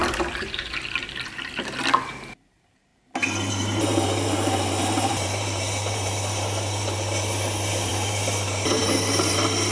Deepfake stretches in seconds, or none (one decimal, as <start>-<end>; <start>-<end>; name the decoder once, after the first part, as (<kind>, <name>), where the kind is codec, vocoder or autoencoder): 2.5-2.9 (vocoder, BigVGAN v2); 3.5-9.7